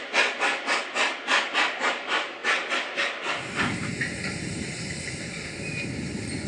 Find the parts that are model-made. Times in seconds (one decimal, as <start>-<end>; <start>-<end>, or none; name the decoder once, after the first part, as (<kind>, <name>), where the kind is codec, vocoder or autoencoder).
none

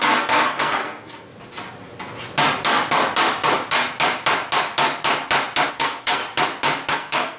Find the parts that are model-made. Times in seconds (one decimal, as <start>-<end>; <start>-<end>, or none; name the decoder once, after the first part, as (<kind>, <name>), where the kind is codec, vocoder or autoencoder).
0.0-1.3 (codec, SNAC); 5.7-6.2; 6.9-7.4

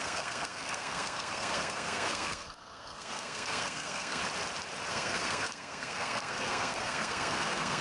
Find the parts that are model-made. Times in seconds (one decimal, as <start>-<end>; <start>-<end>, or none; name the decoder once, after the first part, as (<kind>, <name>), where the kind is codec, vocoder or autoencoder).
0.0-4.2 (codec, SNAC); 4.9-7.8

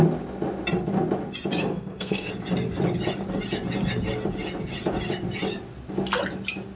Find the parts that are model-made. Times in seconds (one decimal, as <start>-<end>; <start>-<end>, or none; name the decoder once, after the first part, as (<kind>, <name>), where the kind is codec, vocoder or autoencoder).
1.7-2.3 (codec, SNAC)

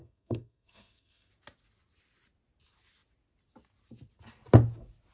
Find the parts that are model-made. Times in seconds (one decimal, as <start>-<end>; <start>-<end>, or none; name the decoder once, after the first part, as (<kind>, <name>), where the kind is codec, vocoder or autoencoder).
0.0-1.3 (codec, SNAC)

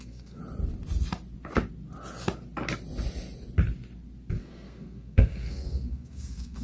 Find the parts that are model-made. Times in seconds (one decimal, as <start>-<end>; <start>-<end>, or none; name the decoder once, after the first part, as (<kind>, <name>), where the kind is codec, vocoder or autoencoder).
0.0-0.4 (codec, SNAC); 4.4-6.6